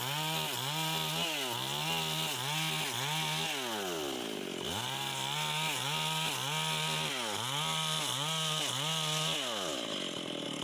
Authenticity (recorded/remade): recorded